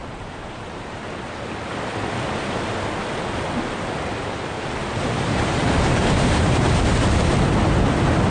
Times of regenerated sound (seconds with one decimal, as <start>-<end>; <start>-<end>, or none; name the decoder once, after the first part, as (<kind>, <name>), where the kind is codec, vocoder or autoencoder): 0.0-1.1 (vocoder, BigVGAN v2); 4.8-6.7